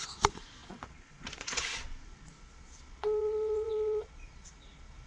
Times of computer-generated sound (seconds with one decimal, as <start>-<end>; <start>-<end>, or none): 0.0-5.1